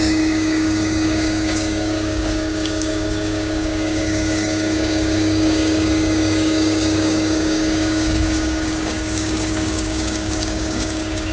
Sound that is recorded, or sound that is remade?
remade